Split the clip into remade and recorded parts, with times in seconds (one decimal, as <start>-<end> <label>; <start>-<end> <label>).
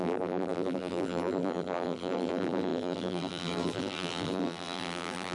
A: 0.0-5.3 remade